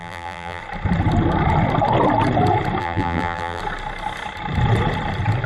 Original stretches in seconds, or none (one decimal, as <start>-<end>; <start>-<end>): 0.6-2.8; 3.6-5.5